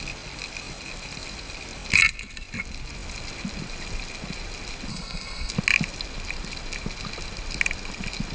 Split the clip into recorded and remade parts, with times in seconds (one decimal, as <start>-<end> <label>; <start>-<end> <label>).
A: 0.0-4.9 recorded; 4.9-5.5 remade; 5.5-8.3 recorded